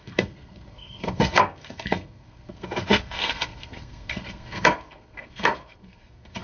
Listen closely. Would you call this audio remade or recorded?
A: remade